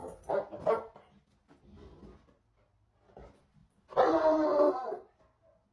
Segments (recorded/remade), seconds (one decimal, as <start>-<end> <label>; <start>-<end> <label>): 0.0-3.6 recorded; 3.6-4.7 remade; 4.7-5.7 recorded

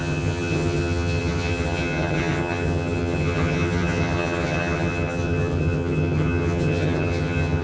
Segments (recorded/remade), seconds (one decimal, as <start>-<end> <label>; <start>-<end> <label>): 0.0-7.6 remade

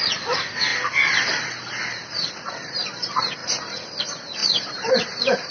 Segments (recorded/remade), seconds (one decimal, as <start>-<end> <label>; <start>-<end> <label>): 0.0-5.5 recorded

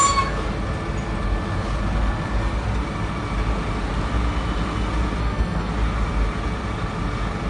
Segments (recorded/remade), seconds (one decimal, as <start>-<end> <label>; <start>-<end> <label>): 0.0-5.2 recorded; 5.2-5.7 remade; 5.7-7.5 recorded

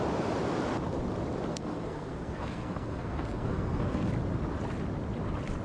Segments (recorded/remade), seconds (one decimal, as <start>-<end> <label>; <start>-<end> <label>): 0.0-1.5 recorded; 1.5-4.1 remade; 4.1-5.6 recorded

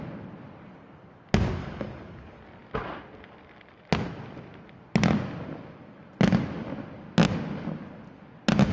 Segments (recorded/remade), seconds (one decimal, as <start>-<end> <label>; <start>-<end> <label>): 0.0-1.6 recorded; 1.6-2.4 remade; 2.4-8.7 recorded

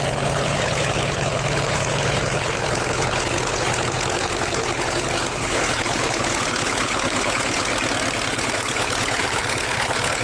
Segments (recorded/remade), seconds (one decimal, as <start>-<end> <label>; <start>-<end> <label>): 0.0-7.7 remade; 7.7-8.3 recorded; 8.3-10.2 remade

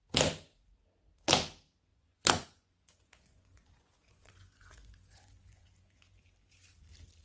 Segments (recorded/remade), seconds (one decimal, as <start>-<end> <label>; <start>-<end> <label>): 0.0-1.9 recorded; 1.9-6.2 remade; 6.2-7.2 recorded